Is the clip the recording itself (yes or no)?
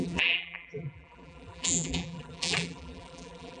no